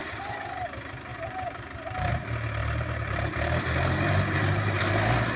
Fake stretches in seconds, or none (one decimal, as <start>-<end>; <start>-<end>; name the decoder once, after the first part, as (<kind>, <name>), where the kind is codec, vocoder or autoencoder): 1.1-2.1 (vocoder, BigVGAN v2); 2.6-5.4